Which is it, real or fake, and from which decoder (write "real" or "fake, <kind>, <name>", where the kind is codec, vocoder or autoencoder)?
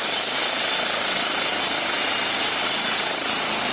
real